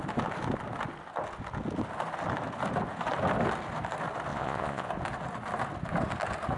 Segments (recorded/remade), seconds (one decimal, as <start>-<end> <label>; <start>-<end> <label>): 0.0-4.3 recorded; 4.3-4.9 remade; 4.9-6.6 recorded